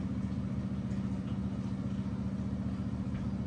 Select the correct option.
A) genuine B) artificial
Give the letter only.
A